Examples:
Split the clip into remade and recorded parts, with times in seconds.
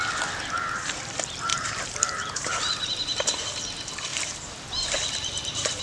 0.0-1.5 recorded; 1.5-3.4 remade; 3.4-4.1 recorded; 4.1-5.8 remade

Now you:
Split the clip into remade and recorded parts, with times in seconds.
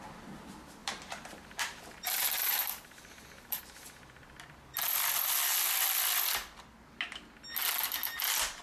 0.0-0.8 recorded; 0.8-3.6 remade; 3.6-8.6 recorded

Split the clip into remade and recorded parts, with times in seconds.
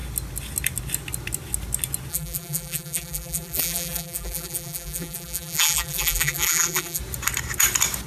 0.0-2.1 recorded; 2.1-7.0 remade; 7.0-8.1 recorded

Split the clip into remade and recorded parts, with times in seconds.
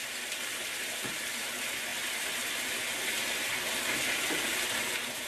0.0-5.3 recorded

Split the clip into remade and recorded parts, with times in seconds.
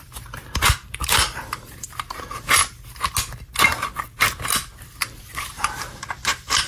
0.0-2.6 remade; 2.6-5.0 recorded; 5.0-6.7 remade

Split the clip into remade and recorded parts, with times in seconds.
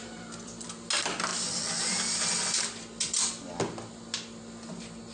0.0-0.9 remade; 0.9-5.1 recorded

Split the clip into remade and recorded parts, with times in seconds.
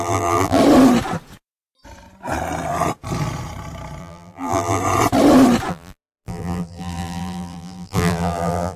0.0-0.6 remade; 0.6-4.0 recorded; 4.0-4.8 remade; 4.8-5.7 recorded; 5.7-8.8 remade